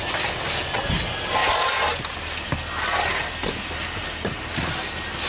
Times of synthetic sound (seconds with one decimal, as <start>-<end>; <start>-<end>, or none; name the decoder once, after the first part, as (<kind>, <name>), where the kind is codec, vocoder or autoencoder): none